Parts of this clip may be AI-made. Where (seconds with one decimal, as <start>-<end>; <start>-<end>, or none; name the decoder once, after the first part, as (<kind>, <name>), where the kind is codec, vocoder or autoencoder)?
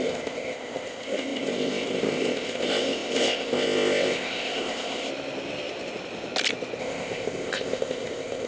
0.0-5.1 (codec, ZipCodec); 6.8-8.5